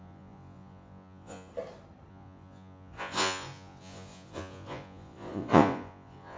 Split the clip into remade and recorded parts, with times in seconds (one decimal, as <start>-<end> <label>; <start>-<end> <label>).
0.0-1.5 remade; 1.5-2.1 recorded; 2.1-6.4 remade